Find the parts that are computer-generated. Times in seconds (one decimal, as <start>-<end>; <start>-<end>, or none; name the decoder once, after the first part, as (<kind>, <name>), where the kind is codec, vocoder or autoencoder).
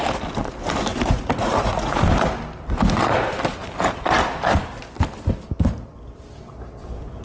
0.9-2.0 (vocoder, Vocos)